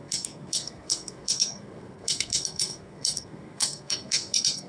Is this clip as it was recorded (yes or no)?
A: no